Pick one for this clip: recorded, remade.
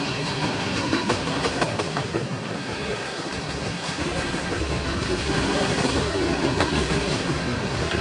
remade